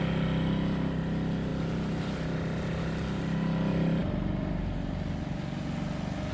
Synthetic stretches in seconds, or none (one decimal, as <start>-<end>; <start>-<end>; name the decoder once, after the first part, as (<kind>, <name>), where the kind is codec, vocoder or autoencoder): none